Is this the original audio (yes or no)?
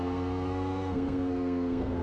no